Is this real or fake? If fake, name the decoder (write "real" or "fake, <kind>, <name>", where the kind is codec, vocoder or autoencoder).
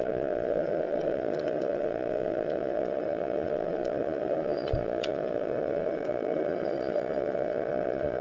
fake, vocoder, Vocos